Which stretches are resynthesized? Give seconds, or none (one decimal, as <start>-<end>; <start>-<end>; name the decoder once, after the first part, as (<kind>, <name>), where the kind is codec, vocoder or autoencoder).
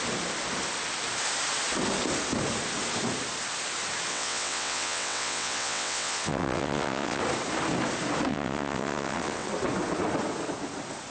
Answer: 4.1-7.2 (vocoder, WaveNeXt); 8.3-9.5